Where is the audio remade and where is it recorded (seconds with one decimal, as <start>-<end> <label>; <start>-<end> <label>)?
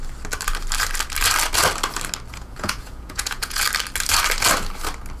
0.0-2.3 recorded; 2.3-3.6 remade; 3.6-5.2 recorded